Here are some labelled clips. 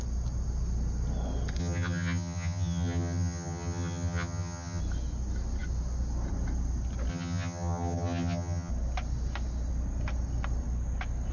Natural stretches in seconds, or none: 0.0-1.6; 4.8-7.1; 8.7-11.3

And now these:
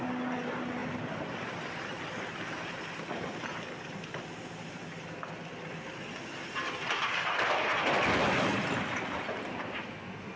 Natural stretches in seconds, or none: 0.0-10.4

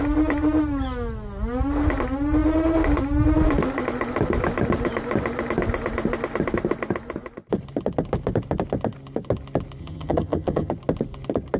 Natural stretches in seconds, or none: 0.0-9.8; 10.7-11.6

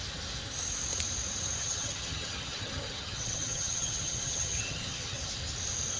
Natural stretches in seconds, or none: 0.0-1.6; 5.2-6.0

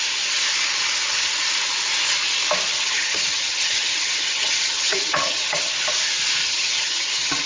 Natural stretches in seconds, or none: 0.0-2.7; 5.7-6.4

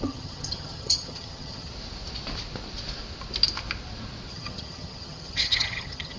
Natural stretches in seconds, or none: 1.7-4.3

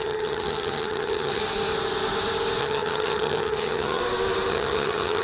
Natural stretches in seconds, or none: 1.4-2.6; 4.0-4.5